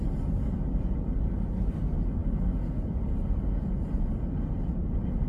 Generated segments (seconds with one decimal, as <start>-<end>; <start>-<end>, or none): none